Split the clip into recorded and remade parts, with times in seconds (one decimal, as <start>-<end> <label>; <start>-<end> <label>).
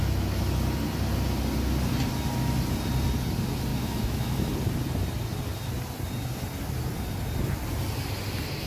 0.0-3.7 recorded; 3.7-4.5 remade; 4.5-8.7 recorded